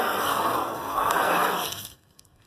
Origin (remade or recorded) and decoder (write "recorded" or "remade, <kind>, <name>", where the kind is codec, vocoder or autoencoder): remade, codec, SNAC